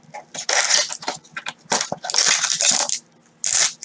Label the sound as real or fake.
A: real